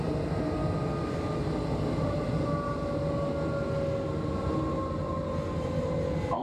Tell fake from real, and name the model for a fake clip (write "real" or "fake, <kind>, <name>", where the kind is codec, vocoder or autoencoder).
real